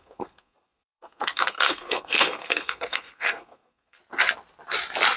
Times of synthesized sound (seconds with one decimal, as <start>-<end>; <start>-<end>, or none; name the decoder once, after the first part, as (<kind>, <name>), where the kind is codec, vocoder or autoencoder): 0.0-4.0 (codec, SNAC)